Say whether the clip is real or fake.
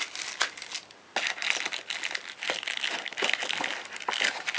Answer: real